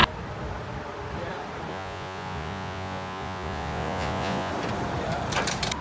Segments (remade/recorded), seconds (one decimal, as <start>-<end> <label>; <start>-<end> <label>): 0.0-1.7 recorded; 1.7-4.5 remade; 4.5-5.8 recorded